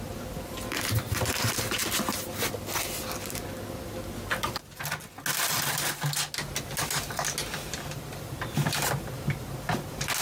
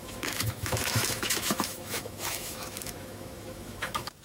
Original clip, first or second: first